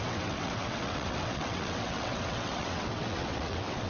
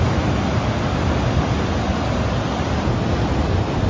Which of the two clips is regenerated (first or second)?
first